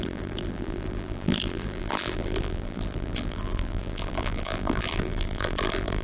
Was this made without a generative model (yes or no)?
no